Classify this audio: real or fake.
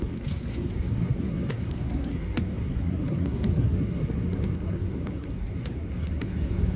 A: fake